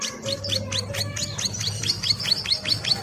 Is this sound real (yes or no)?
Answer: yes